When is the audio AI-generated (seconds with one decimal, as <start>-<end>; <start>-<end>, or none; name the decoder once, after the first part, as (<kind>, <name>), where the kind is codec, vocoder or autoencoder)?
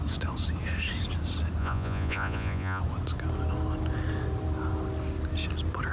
1.6-2.8 (vocoder, Vocos)